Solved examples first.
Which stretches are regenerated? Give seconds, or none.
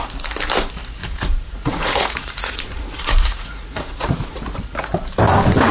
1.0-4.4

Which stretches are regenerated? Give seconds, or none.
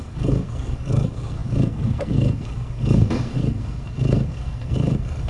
0.0-5.3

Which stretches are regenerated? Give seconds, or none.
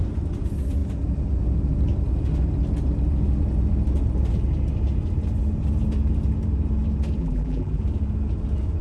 7.2-7.8